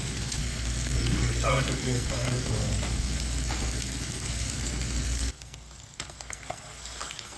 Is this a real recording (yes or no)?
no